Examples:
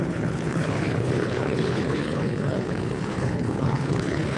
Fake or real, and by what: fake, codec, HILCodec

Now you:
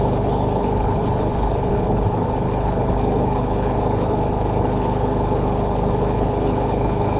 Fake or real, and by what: fake, codec, HILCodec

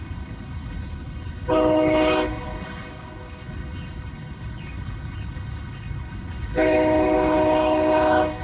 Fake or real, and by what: fake, codec, HILCodec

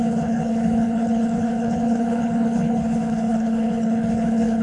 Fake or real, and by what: fake, codec, HILCodec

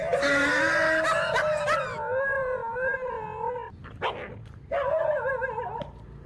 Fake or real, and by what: real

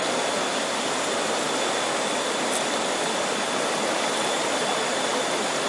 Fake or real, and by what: real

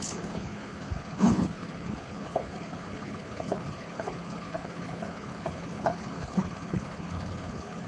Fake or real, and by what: fake, codec, HILCodec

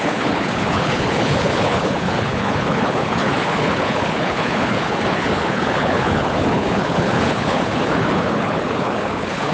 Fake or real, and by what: fake, codec, HILCodec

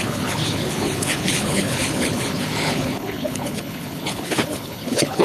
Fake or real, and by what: fake, codec, HILCodec